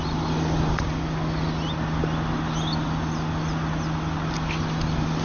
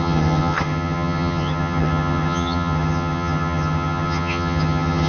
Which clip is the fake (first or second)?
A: second